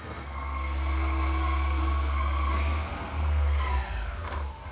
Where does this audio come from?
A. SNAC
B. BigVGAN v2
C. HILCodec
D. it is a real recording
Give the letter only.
A